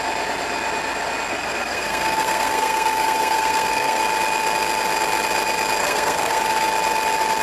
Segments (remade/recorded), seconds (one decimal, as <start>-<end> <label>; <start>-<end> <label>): 0.0-1.3 recorded; 1.3-4.0 remade; 4.0-5.8 recorded; 5.8-6.4 remade; 6.4-7.4 recorded